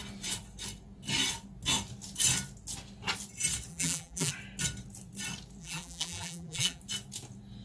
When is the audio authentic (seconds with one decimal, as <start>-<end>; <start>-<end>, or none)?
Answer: 0.0-3.7; 4.3-5.6; 6.8-7.6